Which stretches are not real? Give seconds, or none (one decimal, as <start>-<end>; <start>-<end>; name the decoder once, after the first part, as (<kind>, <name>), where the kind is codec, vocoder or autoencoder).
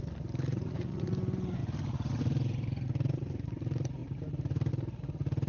0.5-1.1 (vocoder, Vocos)